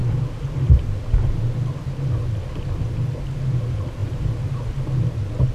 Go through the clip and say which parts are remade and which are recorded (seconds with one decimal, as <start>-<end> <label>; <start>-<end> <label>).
0.0-5.5 recorded